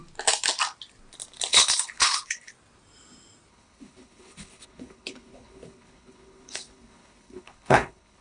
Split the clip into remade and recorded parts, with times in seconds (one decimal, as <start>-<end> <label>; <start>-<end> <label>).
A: 0.0-1.5 recorded; 1.5-2.5 remade; 2.5-3.5 recorded; 3.5-8.2 remade